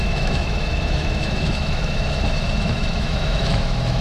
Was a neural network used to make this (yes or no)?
yes